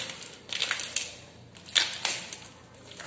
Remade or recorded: recorded